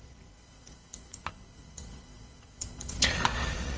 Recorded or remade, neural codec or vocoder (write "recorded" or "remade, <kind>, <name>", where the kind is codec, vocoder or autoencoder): remade, vocoder, Vocos